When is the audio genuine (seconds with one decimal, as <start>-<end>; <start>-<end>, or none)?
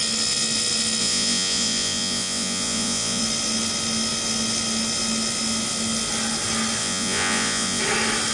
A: 0.0-1.0; 3.2-6.8; 7.8-8.3